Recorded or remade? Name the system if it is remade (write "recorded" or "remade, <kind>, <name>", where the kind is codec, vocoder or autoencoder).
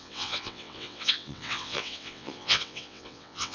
remade, vocoder, WaveNeXt